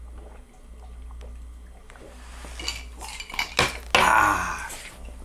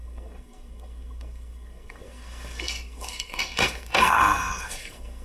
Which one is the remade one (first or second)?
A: second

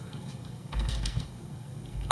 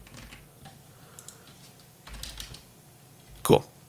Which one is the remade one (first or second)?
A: first